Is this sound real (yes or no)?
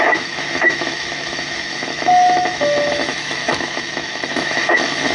no